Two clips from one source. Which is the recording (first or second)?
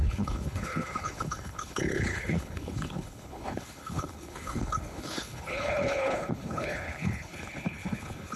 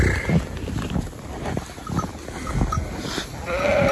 second